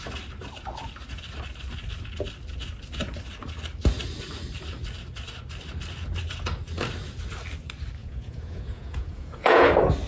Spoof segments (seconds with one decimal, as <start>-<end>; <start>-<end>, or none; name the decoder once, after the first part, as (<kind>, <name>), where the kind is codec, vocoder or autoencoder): 8.0-9.7 (vocoder, Vocos)